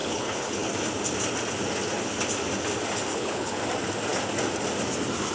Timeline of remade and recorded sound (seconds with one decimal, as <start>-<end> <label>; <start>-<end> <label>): 0.0-0.7 remade; 0.7-3.1 recorded; 3.1-3.6 remade; 3.6-5.3 recorded

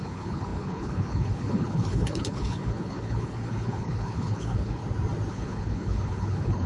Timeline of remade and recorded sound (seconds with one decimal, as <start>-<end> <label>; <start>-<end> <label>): 0.0-4.8 remade; 4.8-5.3 recorded; 5.3-6.7 remade

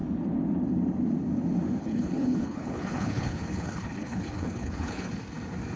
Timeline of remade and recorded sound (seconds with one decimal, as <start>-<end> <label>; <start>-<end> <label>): 0.0-1.8 recorded; 1.8-5.1 remade; 5.1-5.8 recorded